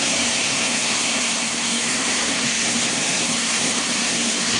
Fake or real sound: fake